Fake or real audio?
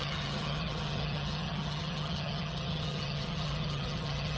fake